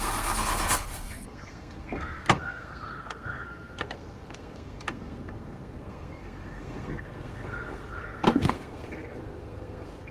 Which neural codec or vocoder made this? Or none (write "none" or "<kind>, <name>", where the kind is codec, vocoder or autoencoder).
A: codec, SNAC